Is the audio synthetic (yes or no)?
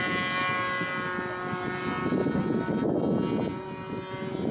no